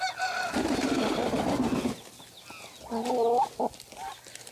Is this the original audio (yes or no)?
yes